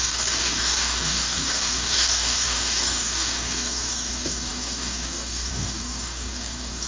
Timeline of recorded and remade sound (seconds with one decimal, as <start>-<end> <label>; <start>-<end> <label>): 0.0-6.9 remade